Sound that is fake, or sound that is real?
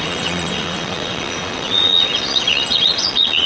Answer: fake